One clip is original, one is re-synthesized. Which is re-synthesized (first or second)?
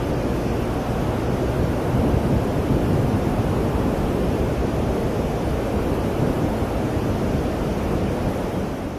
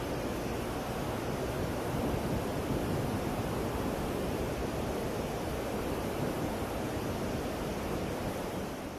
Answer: second